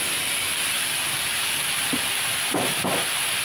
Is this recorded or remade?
recorded